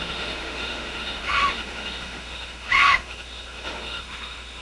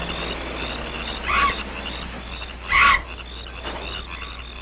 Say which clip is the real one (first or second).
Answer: second